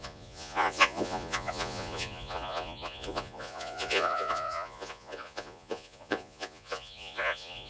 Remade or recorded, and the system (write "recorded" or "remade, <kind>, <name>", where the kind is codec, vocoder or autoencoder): remade, vocoder, Vocos